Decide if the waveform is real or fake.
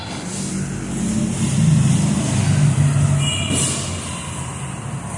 real